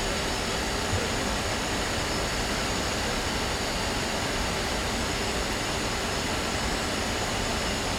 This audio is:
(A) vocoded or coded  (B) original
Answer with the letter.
B